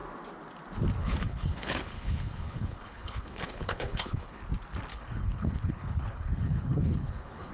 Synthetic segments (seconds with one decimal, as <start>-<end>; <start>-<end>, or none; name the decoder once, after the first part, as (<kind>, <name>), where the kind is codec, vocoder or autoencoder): 1.0-4.4 (codec, HILCodec); 4.9-7.5